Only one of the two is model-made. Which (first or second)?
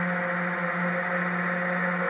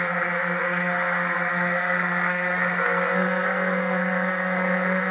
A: second